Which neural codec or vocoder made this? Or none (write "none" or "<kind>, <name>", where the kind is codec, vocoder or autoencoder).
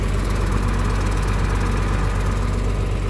none